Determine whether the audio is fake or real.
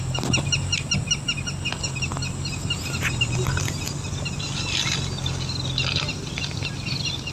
real